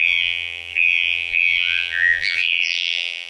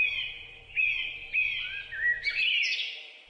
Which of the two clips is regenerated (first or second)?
first